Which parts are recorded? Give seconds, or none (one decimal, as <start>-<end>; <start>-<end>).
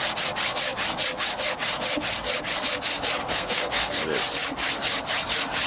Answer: 0.0-3.2; 4.0-5.7